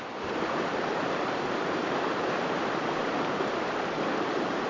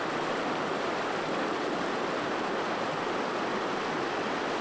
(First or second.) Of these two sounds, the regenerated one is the first